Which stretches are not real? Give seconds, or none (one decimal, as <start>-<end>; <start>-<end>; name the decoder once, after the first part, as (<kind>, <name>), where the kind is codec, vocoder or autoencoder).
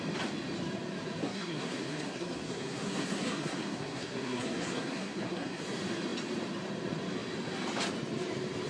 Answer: 1.2-5.6 (codec, SNAC)